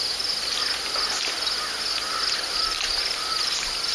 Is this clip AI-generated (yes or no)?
no